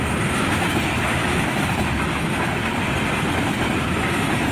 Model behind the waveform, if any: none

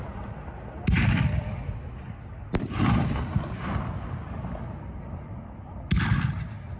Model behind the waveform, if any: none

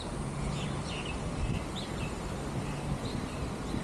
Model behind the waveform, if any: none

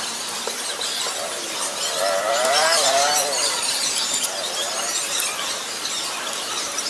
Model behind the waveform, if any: vocoder, BigVGAN v2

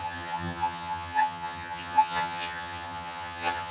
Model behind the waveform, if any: vocoder, HiFi-GAN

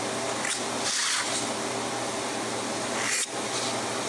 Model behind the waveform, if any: none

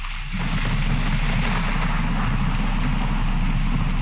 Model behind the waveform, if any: none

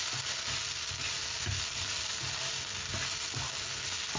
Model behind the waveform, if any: none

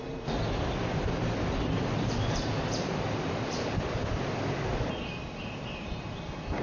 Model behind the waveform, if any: none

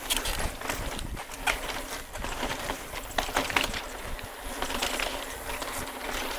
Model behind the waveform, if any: vocoder, BigVGAN v2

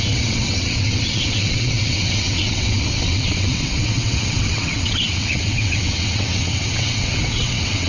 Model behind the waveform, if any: vocoder, WaveNeXt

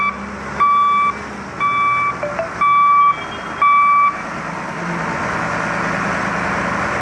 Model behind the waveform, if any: none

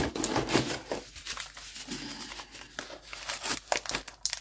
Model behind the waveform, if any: none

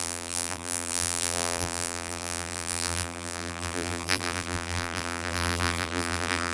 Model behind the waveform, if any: vocoder, BigVGAN v2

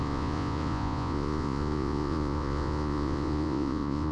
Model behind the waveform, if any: vocoder, Vocos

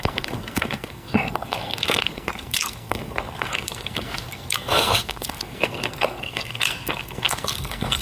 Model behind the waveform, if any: codec, SNAC